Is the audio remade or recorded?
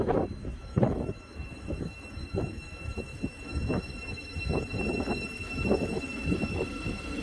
remade